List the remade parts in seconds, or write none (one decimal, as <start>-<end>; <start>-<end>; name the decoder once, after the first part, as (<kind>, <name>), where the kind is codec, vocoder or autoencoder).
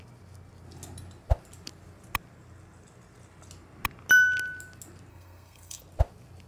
5.1-5.8 (codec, SNAC)